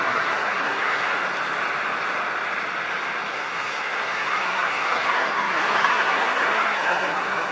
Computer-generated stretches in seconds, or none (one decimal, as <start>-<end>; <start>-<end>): 0.0-1.1; 3.3-7.5